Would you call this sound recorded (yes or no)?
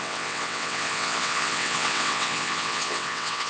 no